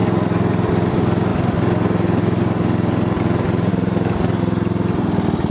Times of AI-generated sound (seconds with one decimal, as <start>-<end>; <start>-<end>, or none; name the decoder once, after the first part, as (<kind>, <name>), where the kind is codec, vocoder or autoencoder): 0.0-0.9 (vocoder, BigVGAN v2)